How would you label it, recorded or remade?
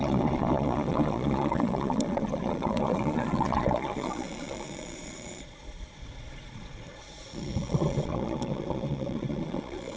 remade